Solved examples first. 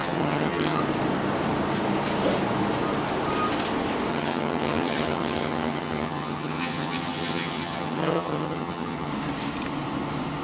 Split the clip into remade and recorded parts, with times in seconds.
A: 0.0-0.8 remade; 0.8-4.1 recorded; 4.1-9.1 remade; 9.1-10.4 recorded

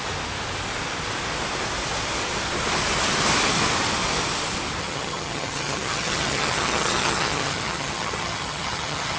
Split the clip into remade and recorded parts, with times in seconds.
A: 0.0-4.8 recorded; 4.8-9.2 remade

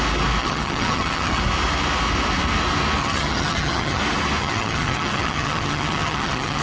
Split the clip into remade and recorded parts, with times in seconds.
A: 0.0-0.4 recorded; 0.4-1.4 remade; 1.4-3.0 recorded; 3.0-4.0 remade; 4.0-4.4 recorded; 4.4-6.6 remade

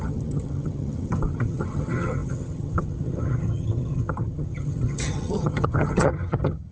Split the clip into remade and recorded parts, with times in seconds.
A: 0.0-6.7 remade

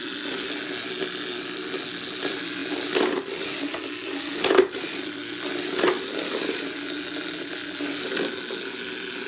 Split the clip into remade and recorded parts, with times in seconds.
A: 0.0-9.3 recorded

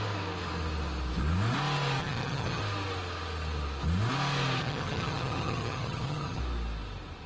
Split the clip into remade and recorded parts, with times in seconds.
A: 0.0-2.0 recorded; 2.0-2.6 remade; 2.6-4.6 recorded; 4.6-6.4 remade; 6.4-7.3 recorded

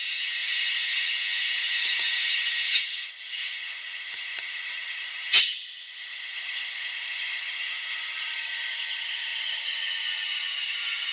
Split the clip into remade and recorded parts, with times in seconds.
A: 0.0-11.1 remade